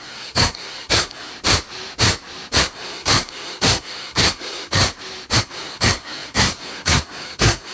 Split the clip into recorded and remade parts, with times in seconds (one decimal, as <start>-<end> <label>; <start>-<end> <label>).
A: 0.0-1.3 remade; 1.3-2.6 recorded; 2.6-4.8 remade; 4.8-5.4 recorded; 5.4-7.7 remade

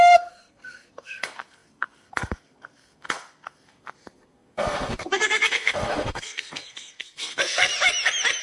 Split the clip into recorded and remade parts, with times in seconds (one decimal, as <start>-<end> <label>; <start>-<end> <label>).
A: 0.0-7.7 remade; 7.7-8.4 recorded

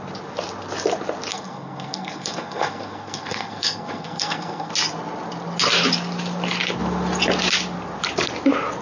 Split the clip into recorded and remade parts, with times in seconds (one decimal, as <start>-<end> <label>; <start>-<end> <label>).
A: 0.0-1.3 recorded; 1.3-4.7 remade; 4.7-8.8 recorded

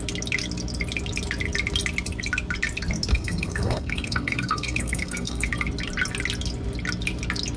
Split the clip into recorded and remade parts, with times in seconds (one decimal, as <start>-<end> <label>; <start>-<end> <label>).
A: 0.0-3.1 recorded; 3.1-5.5 remade; 5.5-7.6 recorded